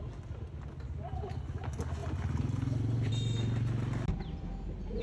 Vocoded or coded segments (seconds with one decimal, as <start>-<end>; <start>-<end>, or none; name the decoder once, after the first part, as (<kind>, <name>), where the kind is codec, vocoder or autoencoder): 2.0-3.1 (vocoder, BigVGAN v2)